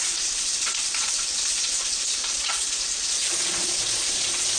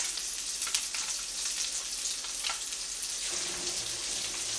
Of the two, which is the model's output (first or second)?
first